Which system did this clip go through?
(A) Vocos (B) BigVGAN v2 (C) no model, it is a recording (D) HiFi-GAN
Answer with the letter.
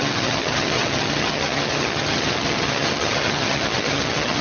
D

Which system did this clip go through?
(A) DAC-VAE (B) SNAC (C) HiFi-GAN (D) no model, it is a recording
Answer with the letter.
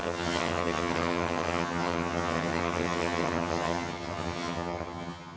C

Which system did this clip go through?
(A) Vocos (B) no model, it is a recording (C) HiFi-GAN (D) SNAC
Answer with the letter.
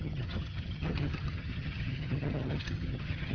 C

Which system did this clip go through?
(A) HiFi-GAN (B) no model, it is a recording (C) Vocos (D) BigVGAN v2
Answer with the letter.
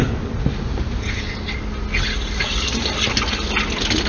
B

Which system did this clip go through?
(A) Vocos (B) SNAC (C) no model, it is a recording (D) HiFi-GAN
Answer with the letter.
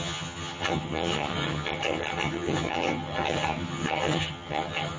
D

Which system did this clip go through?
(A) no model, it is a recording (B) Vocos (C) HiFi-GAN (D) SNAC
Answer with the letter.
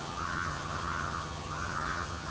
C